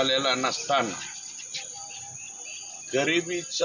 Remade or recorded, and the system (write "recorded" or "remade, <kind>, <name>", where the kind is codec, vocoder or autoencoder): recorded